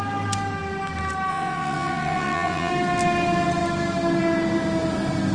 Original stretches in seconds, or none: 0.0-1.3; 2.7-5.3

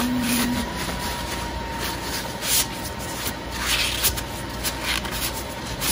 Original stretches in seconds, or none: 1.7-5.2

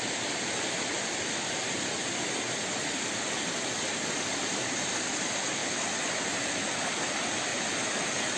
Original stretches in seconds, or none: 0.0-8.4

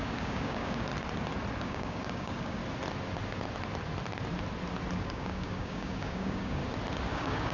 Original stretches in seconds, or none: 0.9-1.6; 2.6-5.0; 6.6-7.1

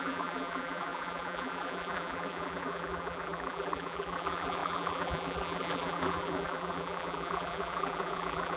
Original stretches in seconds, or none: none

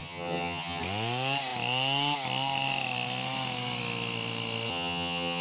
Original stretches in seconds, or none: 0.8-4.7

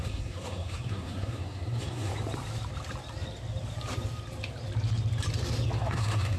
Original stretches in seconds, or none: 2.1-5.9

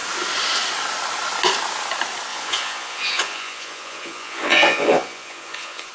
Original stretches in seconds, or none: 0.0-2.3